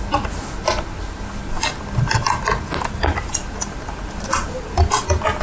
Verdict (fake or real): real